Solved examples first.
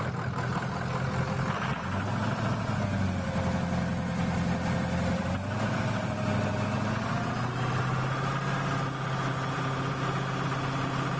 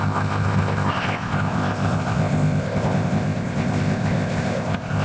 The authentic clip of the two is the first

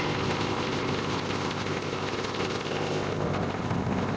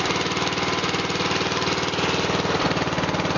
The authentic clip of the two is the second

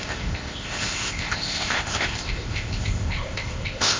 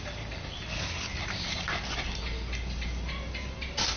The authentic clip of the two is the second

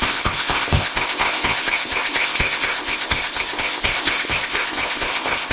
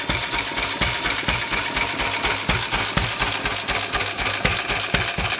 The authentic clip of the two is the second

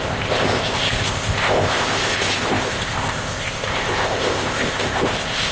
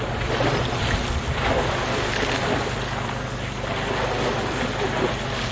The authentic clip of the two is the second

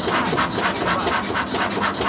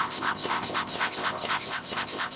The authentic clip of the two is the first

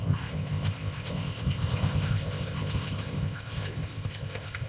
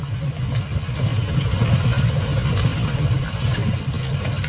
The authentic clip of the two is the second